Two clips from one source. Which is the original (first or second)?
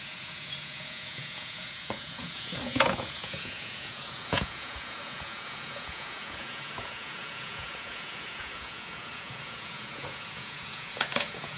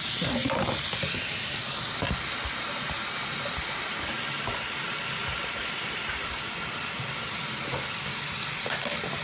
second